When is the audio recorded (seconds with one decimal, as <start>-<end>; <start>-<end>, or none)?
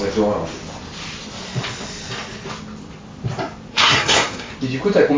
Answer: 0.0-3.7; 4.5-5.2